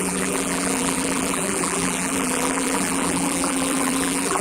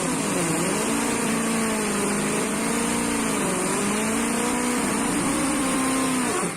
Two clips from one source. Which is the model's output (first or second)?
first